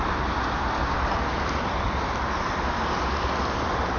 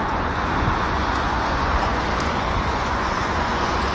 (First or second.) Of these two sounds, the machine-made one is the second